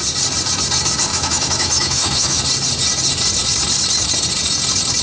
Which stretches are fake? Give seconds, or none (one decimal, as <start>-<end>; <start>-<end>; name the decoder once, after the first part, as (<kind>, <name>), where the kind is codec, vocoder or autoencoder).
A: 1.1-2.4 (autoencoder, DAC-VAE)